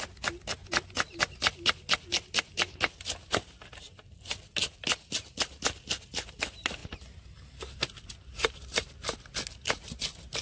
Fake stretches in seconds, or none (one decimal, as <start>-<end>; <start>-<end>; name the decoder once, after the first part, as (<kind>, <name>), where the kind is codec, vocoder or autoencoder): none